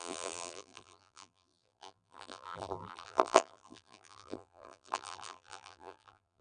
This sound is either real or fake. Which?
fake